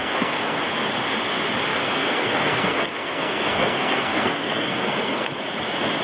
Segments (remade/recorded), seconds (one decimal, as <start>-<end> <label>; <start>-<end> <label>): 0.0-0.6 remade; 0.6-1.7 recorded; 1.7-5.3 remade; 5.3-6.0 recorded